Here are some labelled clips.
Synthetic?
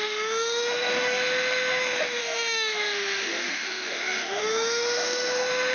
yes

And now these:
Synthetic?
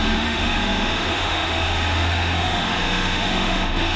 yes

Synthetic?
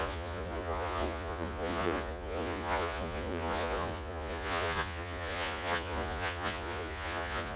yes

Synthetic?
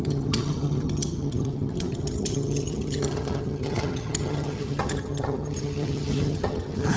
yes